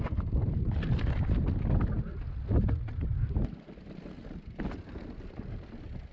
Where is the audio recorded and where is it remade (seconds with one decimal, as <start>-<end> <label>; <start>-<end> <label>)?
0.0-6.1 recorded